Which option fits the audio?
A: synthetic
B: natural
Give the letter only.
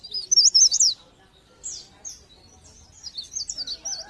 B